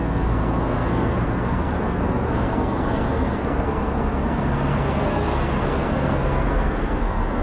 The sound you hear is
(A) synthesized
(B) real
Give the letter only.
A